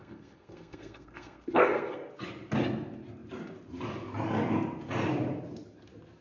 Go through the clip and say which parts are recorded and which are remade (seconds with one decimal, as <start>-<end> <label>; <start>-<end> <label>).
0.0-2.1 remade; 2.1-6.2 recorded